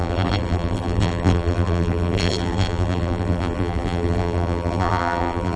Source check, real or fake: fake